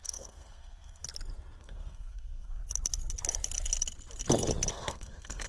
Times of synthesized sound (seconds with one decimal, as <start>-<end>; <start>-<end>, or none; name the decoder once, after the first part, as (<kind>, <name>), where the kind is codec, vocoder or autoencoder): 0.0-1.0 (codec, SNAC); 1.6-2.6; 4.7-5.5